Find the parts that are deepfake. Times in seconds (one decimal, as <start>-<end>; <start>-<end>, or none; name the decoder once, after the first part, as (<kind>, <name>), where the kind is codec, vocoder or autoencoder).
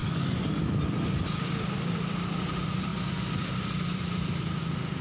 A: 0.6-5.0 (vocoder, BigVGAN v2)